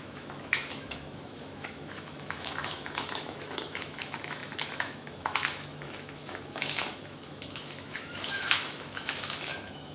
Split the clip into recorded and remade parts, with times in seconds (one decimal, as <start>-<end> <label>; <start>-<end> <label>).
0.0-9.9 remade